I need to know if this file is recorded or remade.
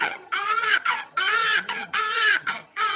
remade